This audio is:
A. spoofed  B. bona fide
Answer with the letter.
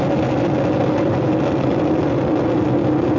B